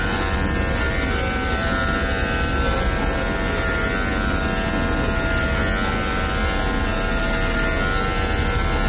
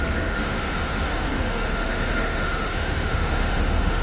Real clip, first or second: first